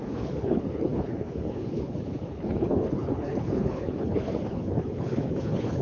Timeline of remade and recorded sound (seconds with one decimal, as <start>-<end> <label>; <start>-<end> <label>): 0.0-5.8 remade